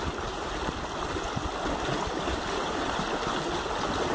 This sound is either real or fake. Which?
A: real